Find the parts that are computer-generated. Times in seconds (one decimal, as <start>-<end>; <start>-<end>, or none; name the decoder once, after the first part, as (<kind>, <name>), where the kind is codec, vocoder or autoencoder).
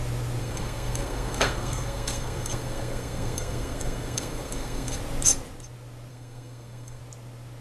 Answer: 0.4-5.0 (codec, SNAC); 6.1-7.0